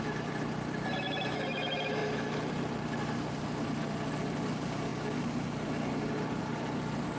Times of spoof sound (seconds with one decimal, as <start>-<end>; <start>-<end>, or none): none